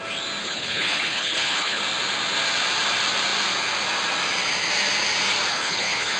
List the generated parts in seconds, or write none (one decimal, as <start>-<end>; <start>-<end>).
0.4-1.8; 5.5-6.2